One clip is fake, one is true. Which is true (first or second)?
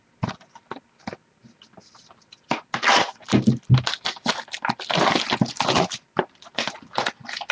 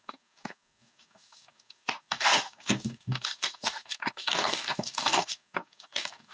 first